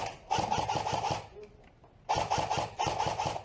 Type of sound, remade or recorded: recorded